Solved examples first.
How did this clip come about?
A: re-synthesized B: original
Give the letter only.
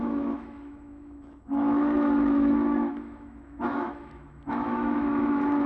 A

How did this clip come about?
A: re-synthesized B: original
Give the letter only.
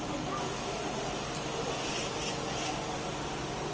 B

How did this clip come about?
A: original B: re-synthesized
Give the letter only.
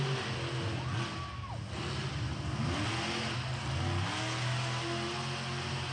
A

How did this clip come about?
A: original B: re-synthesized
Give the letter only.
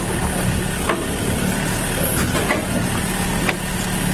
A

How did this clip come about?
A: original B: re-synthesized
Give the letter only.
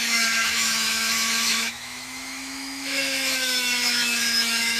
B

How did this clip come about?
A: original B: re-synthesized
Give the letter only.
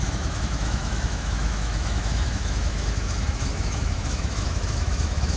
B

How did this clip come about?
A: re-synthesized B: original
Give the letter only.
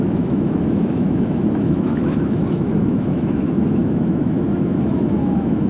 A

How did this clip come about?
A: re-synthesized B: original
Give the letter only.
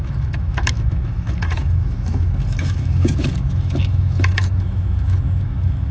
A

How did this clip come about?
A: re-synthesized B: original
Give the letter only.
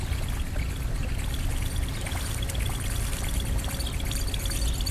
B